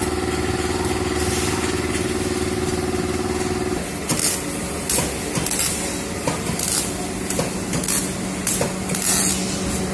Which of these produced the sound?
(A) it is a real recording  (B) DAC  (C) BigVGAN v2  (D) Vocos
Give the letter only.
A